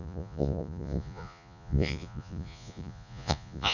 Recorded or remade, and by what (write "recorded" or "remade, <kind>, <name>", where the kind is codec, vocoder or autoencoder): remade, vocoder, Vocos